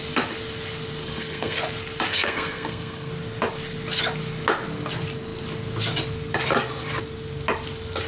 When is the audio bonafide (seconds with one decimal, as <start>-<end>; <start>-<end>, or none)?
0.0-1.0; 1.6-2.1; 3.1-8.1